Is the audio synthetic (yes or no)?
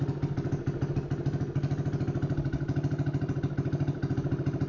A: no